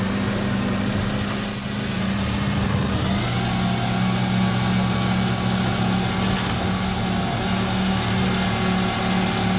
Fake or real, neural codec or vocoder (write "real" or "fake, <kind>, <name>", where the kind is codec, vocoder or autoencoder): real